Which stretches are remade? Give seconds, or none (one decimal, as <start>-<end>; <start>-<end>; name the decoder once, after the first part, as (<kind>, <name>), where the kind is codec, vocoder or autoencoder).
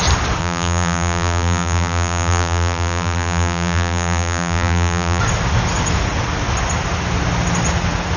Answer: 0.4-5.2 (vocoder, BigVGAN v2)